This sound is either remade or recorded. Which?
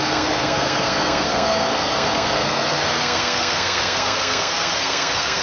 remade